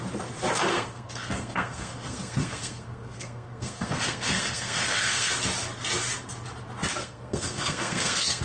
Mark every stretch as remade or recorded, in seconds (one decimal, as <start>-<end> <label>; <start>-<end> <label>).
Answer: 0.0-0.7 recorded; 0.7-5.3 remade; 5.3-7.0 recorded; 7.0-8.4 remade